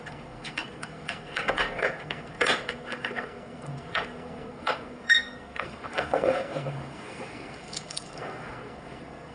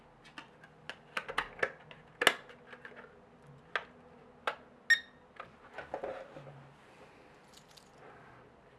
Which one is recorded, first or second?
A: second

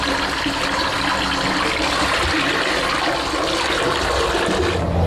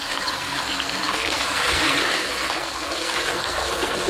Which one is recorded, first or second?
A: first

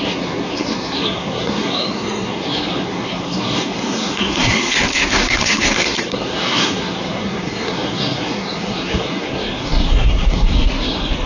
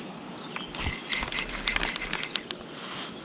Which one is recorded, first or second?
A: second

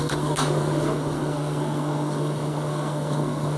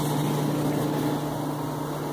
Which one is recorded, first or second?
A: second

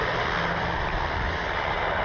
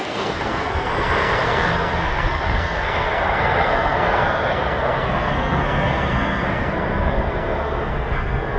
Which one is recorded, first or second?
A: first